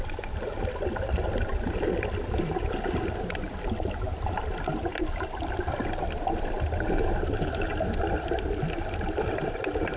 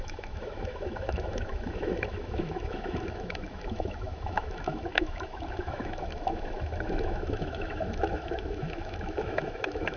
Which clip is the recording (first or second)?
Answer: first